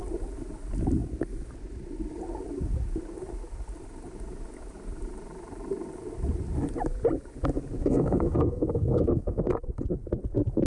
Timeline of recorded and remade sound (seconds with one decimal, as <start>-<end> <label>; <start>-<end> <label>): 0.0-7.8 recorded; 7.8-9.5 remade; 9.5-10.7 recorded